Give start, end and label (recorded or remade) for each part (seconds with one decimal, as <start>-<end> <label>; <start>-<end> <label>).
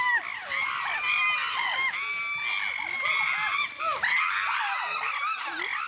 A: 0.0-5.9 recorded